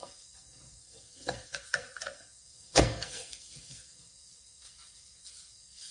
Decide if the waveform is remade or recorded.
remade